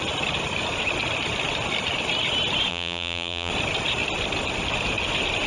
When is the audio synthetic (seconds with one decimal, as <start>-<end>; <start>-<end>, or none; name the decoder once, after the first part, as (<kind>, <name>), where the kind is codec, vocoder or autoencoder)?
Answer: 2.7-3.5 (vocoder, BigVGAN v2)